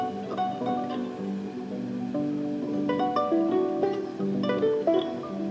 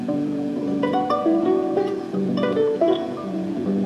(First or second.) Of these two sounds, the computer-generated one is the second